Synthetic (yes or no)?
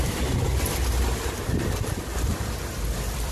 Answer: no